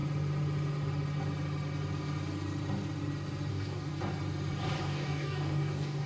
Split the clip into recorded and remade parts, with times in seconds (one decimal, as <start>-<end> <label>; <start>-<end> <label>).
0.0-3.5 recorded; 3.5-3.9 remade; 3.9-4.8 recorded; 4.8-6.1 remade